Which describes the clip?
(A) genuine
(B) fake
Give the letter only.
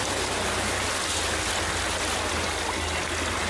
A